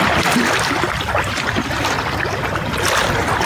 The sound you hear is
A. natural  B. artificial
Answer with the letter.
B